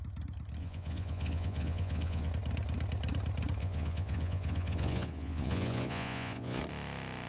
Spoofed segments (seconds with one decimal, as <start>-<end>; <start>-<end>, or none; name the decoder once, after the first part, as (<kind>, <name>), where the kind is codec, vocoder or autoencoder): 0.6-2.3 (vocoder, Vocos); 3.6-6.6